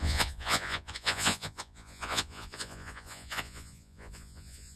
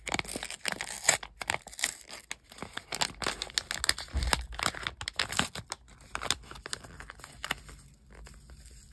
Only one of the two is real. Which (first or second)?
second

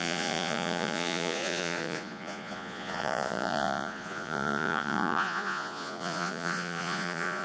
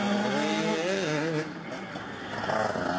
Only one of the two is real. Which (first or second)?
second